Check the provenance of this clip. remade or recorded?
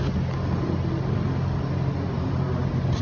recorded